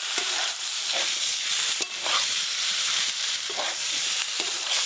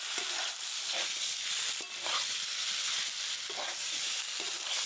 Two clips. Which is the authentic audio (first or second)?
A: second